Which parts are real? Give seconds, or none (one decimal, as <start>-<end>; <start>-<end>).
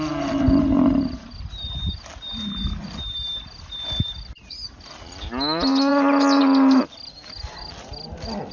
0.0-8.5